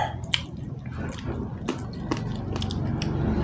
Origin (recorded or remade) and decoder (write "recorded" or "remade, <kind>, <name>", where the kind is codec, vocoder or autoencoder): recorded